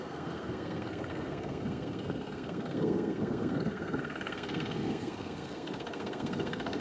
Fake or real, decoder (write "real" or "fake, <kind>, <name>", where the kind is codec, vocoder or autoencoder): fake, codec, SNAC